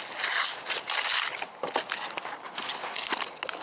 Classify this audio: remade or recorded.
recorded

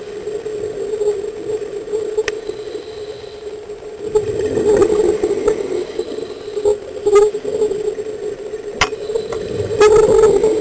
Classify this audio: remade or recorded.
recorded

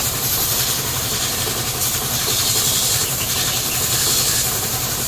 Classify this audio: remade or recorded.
remade